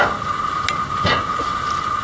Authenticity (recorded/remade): recorded